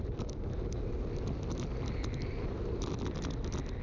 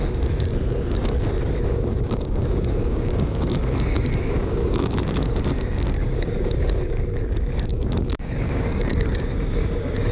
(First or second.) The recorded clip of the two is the first